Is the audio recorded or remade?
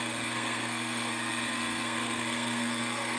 remade